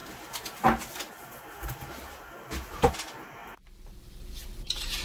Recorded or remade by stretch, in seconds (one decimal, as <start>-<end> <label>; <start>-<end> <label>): 0.0-5.0 recorded